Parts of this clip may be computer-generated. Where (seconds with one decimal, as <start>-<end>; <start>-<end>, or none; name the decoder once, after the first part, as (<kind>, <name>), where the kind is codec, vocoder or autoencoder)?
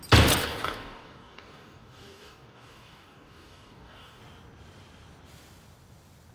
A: 0.4-4.2 (codec, DAC)